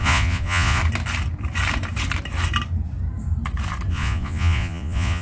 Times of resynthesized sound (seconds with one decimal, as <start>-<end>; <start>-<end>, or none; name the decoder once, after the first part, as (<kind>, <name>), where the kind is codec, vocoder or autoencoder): 0.0-0.8 (vocoder, Vocos); 3.9-5.2